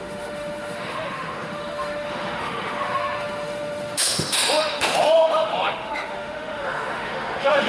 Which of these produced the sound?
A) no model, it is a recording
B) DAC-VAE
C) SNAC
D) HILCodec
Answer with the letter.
B